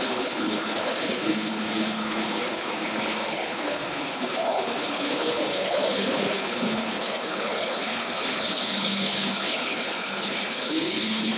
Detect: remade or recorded remade